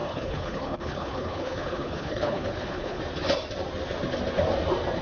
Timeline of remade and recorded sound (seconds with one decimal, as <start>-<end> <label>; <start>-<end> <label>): 0.0-3.0 remade; 3.0-5.0 recorded